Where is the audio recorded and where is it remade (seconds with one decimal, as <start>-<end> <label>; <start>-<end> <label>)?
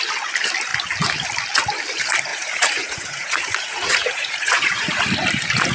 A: 0.0-2.3 recorded; 2.3-5.0 remade; 5.0-5.7 recorded